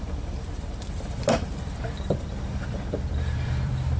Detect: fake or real fake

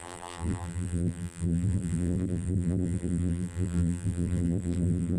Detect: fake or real fake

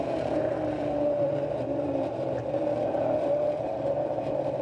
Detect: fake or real fake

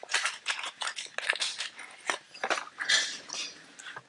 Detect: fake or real real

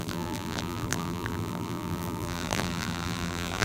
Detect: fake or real fake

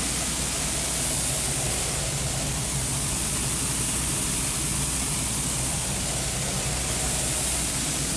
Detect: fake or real real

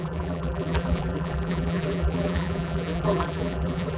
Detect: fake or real fake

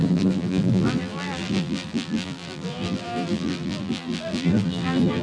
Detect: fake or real fake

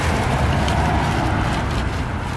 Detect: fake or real fake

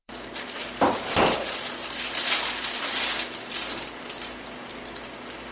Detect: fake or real fake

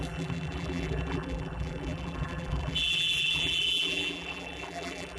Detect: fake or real fake